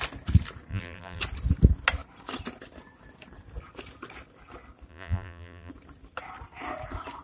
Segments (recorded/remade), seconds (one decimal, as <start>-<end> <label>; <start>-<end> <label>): 0.0-0.7 recorded; 0.7-1.2 remade; 1.2-4.9 recorded; 4.9-5.7 remade; 5.7-7.2 recorded

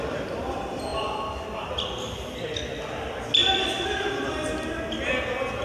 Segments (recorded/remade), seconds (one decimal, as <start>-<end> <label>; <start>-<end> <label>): 0.0-5.6 recorded

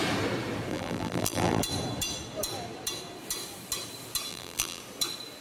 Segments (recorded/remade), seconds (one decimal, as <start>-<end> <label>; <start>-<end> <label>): 0.0-0.7 recorded; 0.7-1.6 remade; 1.6-4.3 recorded; 4.3-4.8 remade; 4.8-5.4 recorded

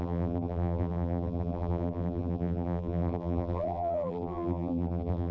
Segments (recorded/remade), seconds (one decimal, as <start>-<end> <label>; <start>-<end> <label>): 0.0-5.3 remade

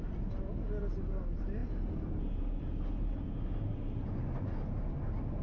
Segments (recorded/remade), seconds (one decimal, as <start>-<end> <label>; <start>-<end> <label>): 0.0-5.4 recorded

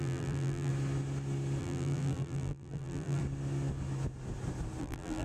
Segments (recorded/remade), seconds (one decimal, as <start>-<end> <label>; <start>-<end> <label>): 0.0-0.7 remade; 0.7-1.6 recorded; 1.6-3.2 remade; 3.2-4.8 recorded; 4.8-5.2 remade

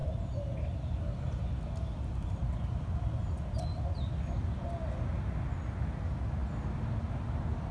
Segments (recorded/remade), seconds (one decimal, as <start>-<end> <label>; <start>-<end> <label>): 0.0-7.7 recorded